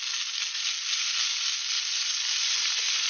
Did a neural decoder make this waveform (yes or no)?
no